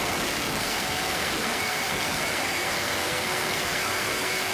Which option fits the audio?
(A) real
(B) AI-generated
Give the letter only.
B